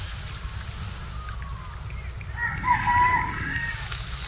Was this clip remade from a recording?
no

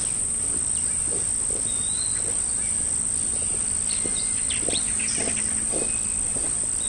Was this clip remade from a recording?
no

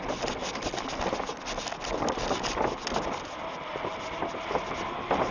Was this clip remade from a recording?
no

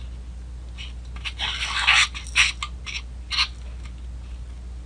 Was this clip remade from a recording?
no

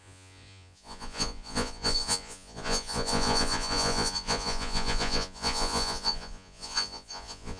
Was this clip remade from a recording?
yes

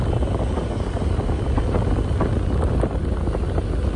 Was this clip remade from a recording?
no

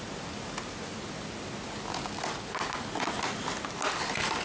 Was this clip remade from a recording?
no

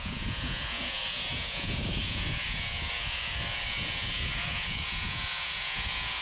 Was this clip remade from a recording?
yes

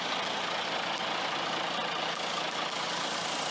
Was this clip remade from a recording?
no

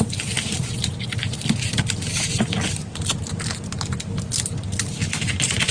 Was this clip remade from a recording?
no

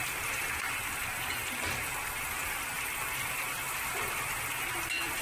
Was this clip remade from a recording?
no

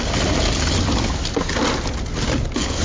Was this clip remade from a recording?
no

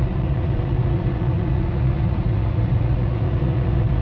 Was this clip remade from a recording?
yes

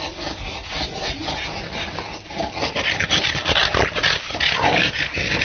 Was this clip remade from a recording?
no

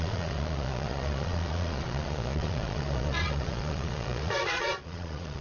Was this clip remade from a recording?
yes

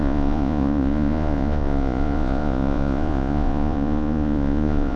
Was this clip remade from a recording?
yes